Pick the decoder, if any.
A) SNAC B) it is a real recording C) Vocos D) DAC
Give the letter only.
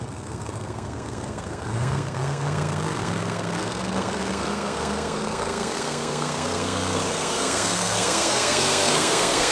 A